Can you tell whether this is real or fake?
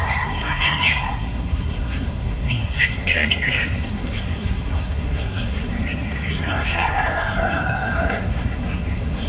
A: fake